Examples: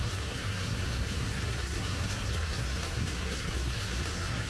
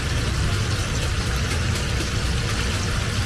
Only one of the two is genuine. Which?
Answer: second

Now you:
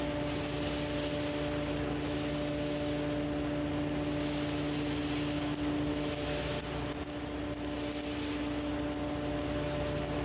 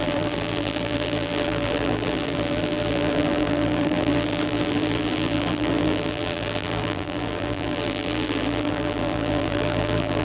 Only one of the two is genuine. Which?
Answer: first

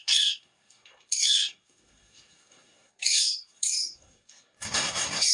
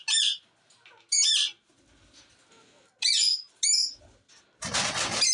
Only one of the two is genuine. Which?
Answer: second